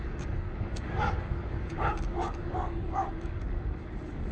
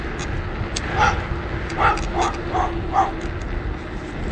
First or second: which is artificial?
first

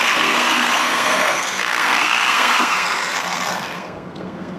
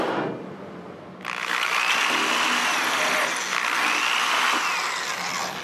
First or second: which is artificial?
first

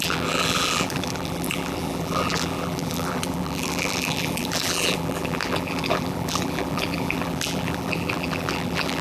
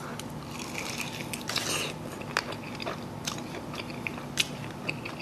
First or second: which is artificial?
first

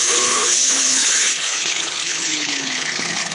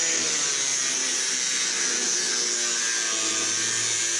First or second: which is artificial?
first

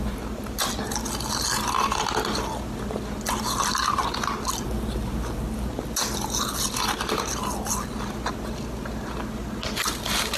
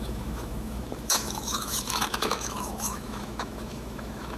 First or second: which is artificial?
second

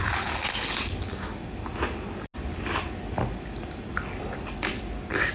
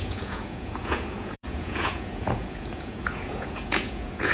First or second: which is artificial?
second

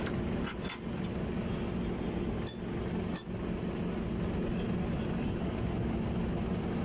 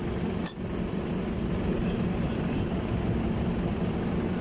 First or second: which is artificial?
second